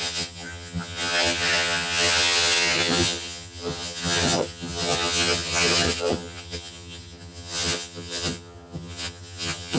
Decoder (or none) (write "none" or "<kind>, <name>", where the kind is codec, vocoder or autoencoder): vocoder, HiFi-GAN